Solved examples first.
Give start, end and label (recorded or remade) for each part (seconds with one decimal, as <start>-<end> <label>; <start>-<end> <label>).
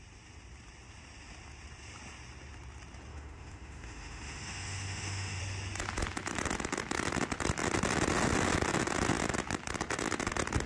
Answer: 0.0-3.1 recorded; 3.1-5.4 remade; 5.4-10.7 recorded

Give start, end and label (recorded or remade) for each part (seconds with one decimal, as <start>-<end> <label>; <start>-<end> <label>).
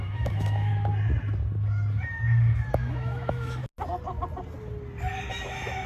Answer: 0.0-0.7 remade; 0.7-2.7 recorded; 2.7-3.6 remade; 3.6-5.3 recorded; 5.3-5.9 remade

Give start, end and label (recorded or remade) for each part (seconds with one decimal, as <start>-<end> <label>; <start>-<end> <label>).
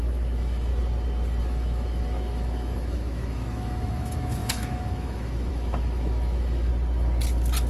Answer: 0.0-0.7 remade; 0.7-1.4 recorded; 1.4-6.7 remade; 6.7-7.7 recorded